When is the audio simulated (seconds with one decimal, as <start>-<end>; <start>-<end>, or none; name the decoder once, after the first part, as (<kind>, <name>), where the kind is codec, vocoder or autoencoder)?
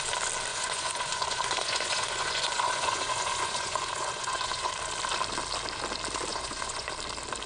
0.5-4.7 (vocoder, Vocos); 6.3-6.9